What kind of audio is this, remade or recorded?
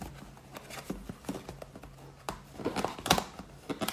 recorded